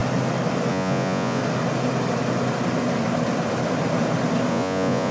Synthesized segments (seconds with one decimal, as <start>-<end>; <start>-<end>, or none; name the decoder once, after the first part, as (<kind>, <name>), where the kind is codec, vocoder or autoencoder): 0.7-1.4 (vocoder, Vocos); 4.5-5.1